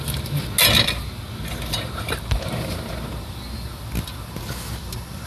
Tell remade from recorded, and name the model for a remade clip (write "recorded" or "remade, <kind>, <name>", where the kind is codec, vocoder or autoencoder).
recorded